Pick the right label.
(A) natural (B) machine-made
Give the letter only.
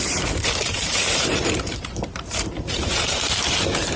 B